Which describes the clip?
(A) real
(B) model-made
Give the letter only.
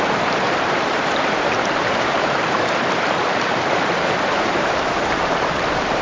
B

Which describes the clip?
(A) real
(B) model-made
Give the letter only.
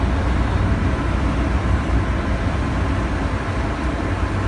A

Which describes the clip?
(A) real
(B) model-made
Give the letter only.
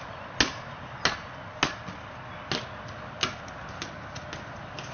A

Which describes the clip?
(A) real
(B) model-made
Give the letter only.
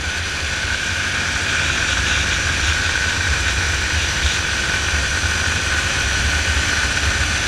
B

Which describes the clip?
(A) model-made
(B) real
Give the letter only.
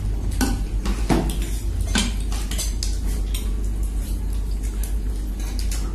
B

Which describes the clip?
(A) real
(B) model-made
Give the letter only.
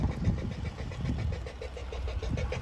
A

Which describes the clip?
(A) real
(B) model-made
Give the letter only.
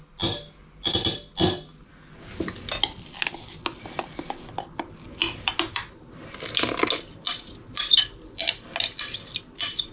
A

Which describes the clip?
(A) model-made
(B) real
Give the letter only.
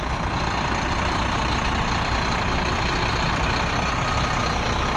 B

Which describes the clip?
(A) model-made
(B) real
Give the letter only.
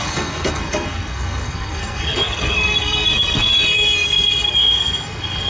A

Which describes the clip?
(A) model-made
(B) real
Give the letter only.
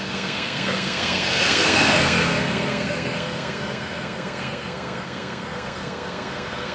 A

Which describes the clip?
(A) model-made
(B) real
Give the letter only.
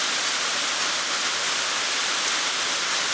B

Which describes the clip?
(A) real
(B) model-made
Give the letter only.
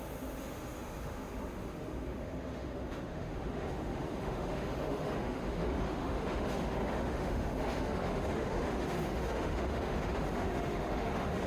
B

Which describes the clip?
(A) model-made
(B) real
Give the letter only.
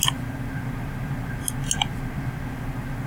B